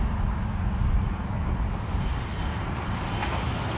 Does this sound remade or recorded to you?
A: recorded